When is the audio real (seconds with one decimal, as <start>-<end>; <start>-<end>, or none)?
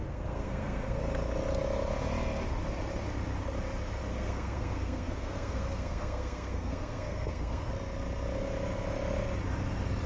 1.0-4.1; 7.7-10.1